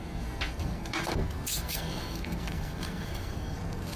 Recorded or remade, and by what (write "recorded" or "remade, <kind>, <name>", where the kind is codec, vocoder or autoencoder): remade, codec, SNAC